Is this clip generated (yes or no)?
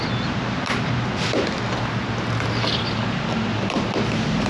no